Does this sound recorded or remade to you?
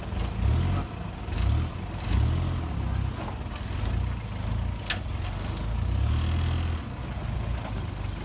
recorded